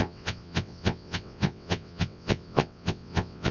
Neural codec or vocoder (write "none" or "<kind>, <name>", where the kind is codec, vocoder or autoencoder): vocoder, WaveNeXt